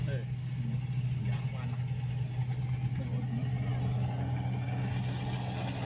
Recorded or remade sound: recorded